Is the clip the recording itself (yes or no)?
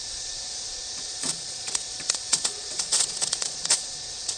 no